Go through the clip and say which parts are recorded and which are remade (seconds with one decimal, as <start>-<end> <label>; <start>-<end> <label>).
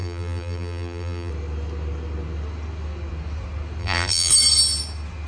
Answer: 0.0-1.3 remade; 1.3-3.8 recorded; 3.8-4.3 remade; 4.3-5.3 recorded